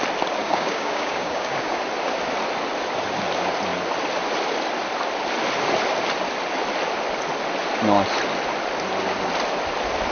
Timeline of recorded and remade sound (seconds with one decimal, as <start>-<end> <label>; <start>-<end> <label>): 0.0-0.4 recorded; 0.4-1.8 remade; 1.8-10.1 recorded